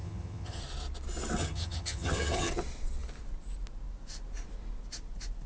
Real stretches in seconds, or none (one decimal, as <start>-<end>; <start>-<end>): 0.6-1.4; 2.5-5.5

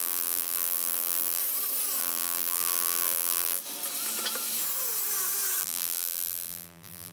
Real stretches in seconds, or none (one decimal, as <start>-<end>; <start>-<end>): 1.4-2.0; 3.6-5.6

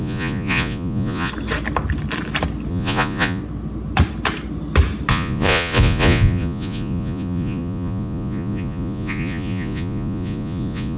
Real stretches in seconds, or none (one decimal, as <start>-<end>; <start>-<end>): 1.3-2.7; 3.4-5.1

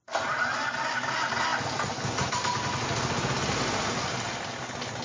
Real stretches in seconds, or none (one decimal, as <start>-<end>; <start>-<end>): 0.0-5.0